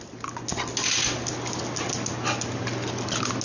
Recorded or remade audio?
recorded